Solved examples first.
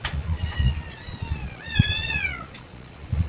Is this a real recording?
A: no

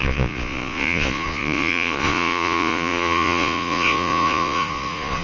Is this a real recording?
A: no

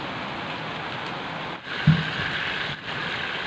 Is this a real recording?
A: yes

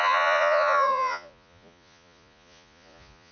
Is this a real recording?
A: no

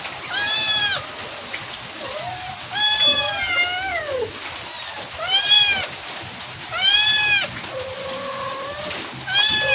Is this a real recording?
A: yes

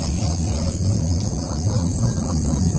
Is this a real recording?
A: no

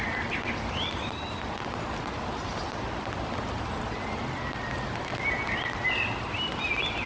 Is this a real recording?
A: yes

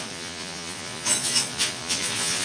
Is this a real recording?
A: no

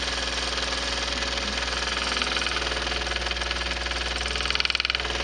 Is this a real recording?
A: yes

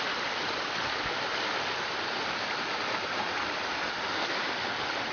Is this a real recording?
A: yes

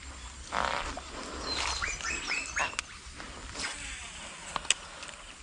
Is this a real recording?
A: yes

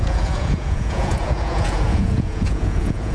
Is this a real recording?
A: no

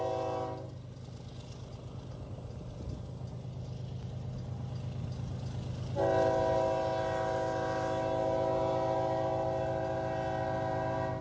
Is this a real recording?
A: yes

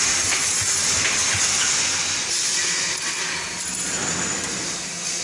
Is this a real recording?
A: yes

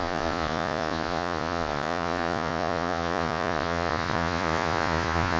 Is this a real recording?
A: no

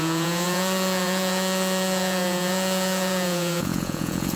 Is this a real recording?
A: no